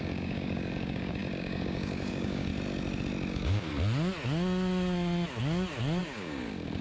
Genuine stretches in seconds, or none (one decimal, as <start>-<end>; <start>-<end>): 2.5-3.3; 3.7-6.0